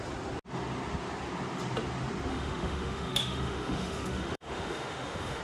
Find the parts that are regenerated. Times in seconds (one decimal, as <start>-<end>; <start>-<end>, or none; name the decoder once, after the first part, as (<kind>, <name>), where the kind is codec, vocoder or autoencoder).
2.3-5.4 (autoencoder, DAC-VAE)